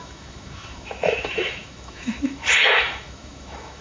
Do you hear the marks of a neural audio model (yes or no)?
yes